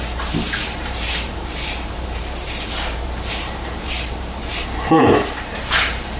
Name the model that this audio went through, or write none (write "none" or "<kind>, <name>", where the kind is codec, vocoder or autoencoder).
vocoder, BigVGAN v2